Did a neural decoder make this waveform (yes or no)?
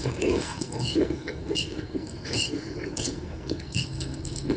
yes